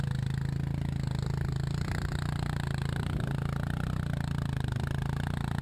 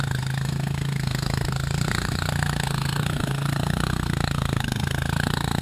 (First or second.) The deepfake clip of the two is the second